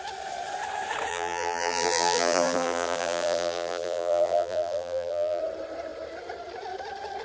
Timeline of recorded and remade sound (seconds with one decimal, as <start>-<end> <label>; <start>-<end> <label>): 0.0-1.1 recorded; 1.1-5.4 remade; 5.4-7.2 recorded